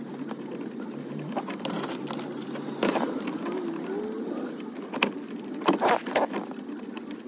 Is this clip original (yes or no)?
yes